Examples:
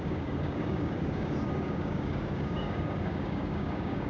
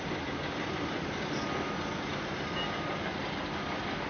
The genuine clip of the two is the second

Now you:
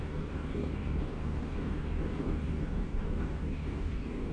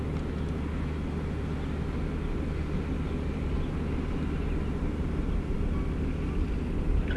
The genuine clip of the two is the second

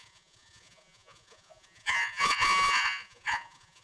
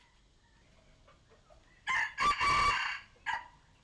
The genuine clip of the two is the second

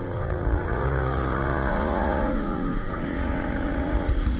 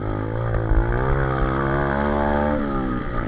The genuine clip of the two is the second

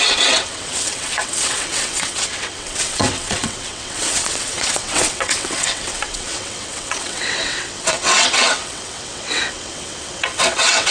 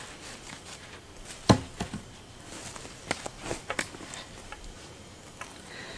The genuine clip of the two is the second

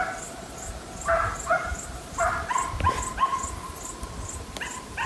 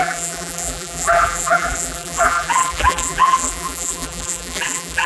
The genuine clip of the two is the first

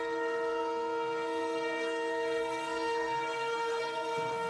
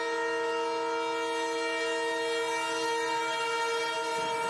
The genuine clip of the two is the second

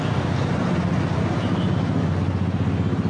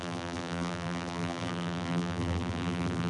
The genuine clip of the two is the first